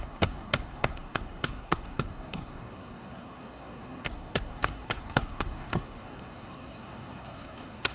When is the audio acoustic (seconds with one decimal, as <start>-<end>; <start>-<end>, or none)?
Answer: none